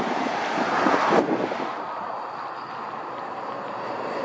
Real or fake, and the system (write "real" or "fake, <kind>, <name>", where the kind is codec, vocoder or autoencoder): real